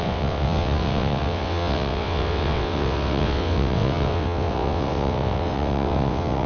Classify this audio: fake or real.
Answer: fake